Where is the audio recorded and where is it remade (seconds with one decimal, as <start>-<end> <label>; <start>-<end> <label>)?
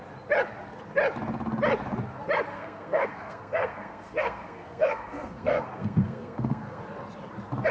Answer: 0.0-2.5 recorded; 2.5-6.8 remade; 6.8-7.7 recorded